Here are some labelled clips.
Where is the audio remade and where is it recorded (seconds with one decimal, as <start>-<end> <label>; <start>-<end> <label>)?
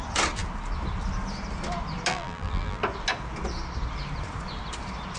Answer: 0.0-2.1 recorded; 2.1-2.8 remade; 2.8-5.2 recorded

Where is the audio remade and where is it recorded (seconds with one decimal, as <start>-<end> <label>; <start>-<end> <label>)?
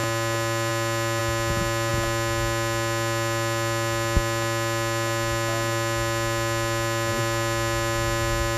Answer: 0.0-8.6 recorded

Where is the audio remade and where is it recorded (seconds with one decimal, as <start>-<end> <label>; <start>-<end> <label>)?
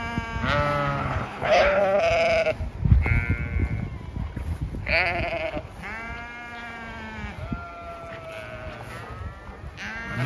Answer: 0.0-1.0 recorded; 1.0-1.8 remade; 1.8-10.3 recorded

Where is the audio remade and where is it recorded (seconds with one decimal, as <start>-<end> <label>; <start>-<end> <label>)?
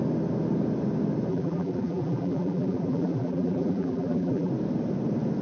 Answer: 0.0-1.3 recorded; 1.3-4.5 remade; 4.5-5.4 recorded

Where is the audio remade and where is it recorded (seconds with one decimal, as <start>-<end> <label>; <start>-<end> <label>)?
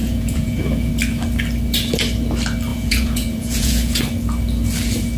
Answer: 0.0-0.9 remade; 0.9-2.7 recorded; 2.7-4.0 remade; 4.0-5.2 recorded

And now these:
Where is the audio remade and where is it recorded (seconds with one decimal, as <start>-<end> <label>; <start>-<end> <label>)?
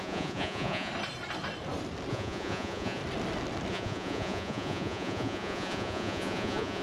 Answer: 0.0-0.9 remade; 0.9-2.1 recorded; 2.1-3.0 remade; 3.0-3.7 recorded; 3.7-6.8 remade